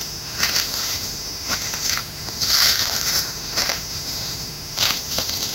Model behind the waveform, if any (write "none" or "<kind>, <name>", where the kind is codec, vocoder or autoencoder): autoencoder, DAC-VAE